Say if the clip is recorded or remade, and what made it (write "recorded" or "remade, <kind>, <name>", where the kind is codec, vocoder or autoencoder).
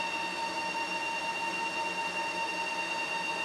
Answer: recorded